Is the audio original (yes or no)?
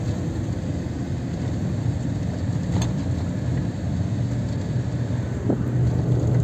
yes